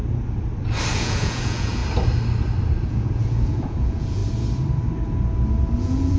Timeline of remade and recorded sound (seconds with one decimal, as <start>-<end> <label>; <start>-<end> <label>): 0.0-0.9 recorded; 0.9-1.8 remade; 1.8-2.9 recorded; 2.9-4.2 remade; 4.2-5.8 recorded; 5.8-6.2 remade

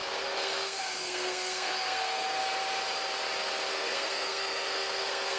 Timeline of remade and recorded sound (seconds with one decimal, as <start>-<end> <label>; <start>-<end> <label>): 0.0-2.4 remade; 2.4-3.7 recorded; 3.7-5.4 remade

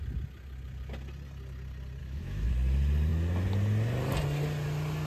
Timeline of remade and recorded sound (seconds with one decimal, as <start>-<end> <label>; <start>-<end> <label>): 0.0-2.0 recorded; 2.0-2.5 remade; 2.5-5.1 recorded

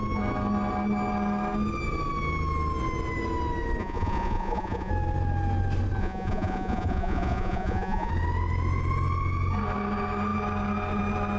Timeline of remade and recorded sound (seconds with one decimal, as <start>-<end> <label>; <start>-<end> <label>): 0.0-3.8 recorded; 3.8-4.9 remade; 4.9-6.0 recorded; 6.0-8.1 remade; 8.1-11.4 recorded

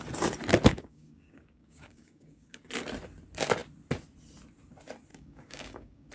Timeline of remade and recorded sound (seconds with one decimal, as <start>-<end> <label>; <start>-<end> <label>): 0.0-0.7 recorded; 0.7-2.7 remade; 2.7-5.1 recorded; 5.1-6.1 remade

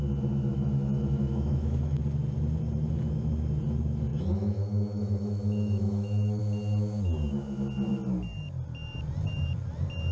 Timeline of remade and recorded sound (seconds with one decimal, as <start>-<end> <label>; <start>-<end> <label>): 0.0-0.5 recorded; 0.5-2.0 remade; 2.0-4.1 recorded; 4.1-6.4 remade; 6.4-10.1 recorded